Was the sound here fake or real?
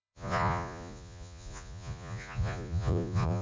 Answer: fake